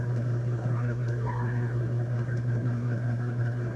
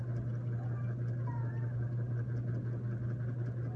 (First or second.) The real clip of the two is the second